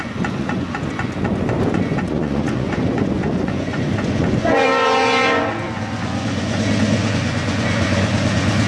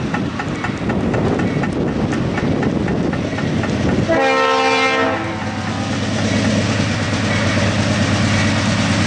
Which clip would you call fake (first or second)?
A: first